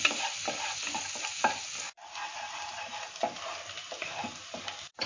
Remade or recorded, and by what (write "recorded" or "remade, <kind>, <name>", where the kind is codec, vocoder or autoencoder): recorded